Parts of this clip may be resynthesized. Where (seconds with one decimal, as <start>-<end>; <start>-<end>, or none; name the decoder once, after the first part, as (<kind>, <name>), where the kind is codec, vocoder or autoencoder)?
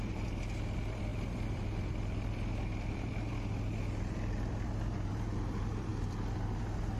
0.0-7.0 (vocoder, BigVGAN v2)